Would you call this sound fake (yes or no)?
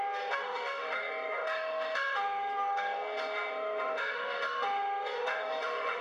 yes